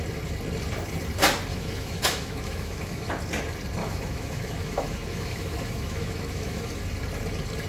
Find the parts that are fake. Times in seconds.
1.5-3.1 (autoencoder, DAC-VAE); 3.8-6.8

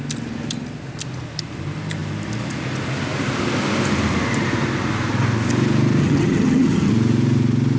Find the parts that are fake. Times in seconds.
6.0-6.9 (vocoder, HiFi-GAN)

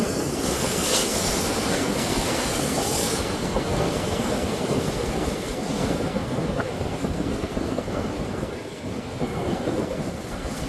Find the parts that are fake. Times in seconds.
0.0-10.7 (codec, SNAC)

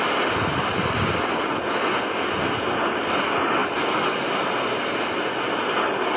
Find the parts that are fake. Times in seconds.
none